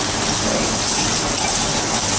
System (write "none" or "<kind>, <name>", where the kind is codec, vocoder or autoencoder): none